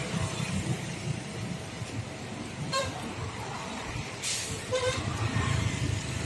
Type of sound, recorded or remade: remade